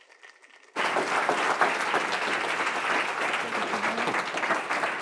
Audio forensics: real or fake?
real